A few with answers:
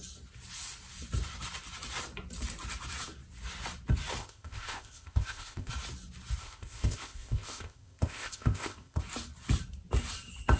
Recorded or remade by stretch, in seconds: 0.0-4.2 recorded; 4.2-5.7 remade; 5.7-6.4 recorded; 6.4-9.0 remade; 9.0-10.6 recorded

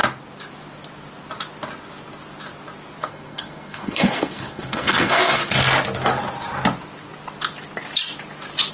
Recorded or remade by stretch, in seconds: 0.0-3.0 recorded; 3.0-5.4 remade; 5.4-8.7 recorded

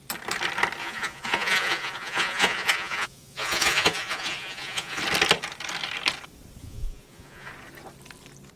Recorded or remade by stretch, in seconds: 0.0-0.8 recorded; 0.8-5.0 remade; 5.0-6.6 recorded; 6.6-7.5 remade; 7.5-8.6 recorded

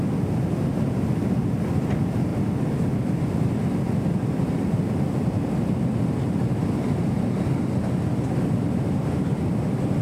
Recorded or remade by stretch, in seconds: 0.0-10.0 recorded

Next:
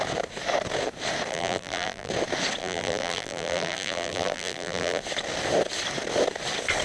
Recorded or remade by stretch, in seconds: 0.0-1.3 recorded; 1.3-2.1 remade; 2.1-2.6 recorded; 2.6-5.0 remade; 5.0-6.8 recorded

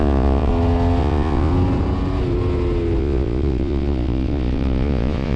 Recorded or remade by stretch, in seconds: 0.0-0.5 remade; 0.5-1.0 recorded; 1.0-1.5 remade; 1.5-3.0 recorded; 3.0-5.4 remade